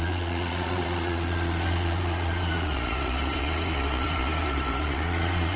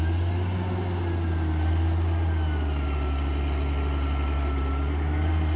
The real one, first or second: second